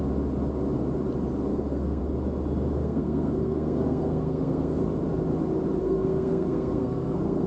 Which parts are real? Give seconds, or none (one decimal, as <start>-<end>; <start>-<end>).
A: 0.0-1.5; 2.0-2.8; 4.8-5.8